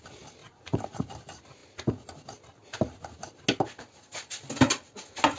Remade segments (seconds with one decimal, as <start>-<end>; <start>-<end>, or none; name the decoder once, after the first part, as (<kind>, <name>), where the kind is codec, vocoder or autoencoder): 0.4-1.0 (vocoder, Vocos)

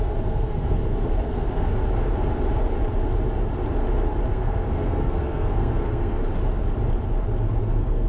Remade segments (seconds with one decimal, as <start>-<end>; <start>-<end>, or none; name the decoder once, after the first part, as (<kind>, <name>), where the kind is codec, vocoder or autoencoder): 0.0-1.7 (codec, SNAC); 4.3-6.2; 7.6-8.1

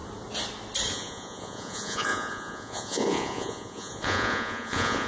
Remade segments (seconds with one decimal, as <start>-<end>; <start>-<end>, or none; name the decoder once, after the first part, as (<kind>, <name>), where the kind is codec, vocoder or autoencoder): 0.9-5.1 (vocoder, Vocos)

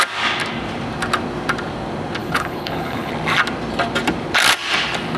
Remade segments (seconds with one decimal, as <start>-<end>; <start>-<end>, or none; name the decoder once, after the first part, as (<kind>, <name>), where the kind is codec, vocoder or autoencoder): 2.2-3.1 (codec, HILCodec)

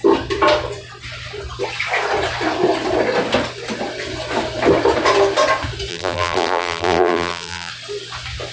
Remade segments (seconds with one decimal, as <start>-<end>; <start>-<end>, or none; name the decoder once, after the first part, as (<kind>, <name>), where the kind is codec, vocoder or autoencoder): 5.9-7.7 (vocoder, BigVGAN v2)